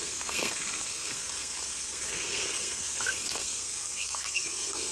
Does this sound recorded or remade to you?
remade